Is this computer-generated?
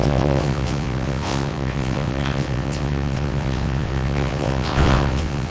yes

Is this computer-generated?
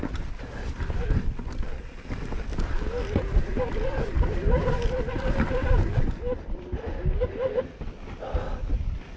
no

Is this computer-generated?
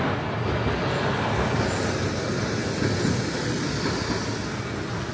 no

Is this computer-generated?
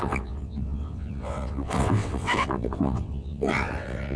yes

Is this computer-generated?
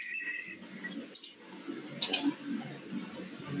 no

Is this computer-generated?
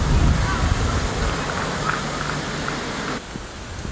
no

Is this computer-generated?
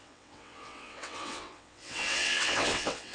yes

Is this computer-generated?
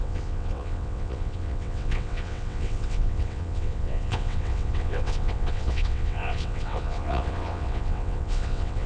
yes